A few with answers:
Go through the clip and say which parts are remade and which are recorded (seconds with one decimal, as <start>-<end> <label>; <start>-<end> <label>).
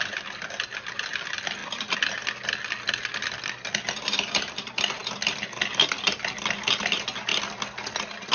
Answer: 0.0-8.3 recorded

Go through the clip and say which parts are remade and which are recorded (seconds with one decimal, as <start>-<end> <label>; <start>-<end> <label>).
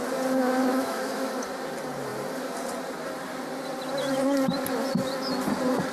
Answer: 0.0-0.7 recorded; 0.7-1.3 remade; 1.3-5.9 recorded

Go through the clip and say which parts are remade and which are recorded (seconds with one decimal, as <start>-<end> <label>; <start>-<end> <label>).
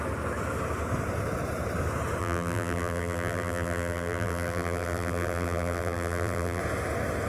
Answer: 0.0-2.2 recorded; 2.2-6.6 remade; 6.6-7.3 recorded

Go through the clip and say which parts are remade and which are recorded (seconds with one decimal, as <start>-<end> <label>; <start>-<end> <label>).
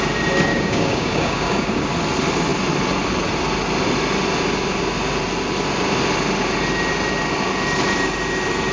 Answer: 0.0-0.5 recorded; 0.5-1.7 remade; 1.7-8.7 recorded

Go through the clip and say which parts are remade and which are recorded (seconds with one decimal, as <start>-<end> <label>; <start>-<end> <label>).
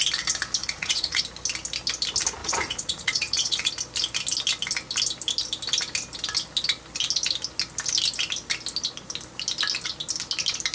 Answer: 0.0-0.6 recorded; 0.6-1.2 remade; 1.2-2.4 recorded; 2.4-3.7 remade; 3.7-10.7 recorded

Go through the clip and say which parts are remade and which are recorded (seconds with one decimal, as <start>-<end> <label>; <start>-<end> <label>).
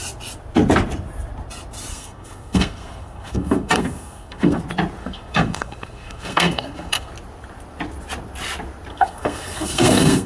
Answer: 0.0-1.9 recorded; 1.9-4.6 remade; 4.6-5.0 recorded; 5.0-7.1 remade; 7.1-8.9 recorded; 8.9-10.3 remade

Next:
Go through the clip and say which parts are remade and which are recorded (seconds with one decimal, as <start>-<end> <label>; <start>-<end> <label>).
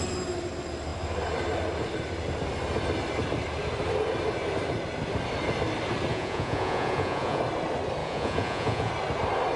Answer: 0.0-6.1 recorded; 6.1-7.4 remade; 7.4-8.0 recorded; 8.0-8.9 remade; 8.9-9.6 recorded